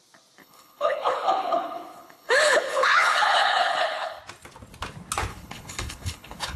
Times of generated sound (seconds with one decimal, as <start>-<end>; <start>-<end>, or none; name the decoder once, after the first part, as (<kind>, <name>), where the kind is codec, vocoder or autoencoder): 0.4-4.2 (codec, HILCodec); 5.3-6.6